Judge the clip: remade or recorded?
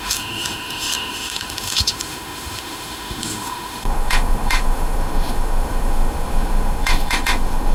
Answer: remade